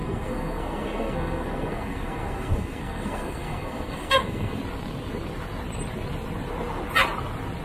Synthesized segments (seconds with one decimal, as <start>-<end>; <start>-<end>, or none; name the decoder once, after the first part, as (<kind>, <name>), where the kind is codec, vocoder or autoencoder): 0.0-4.6 (codec, SNAC)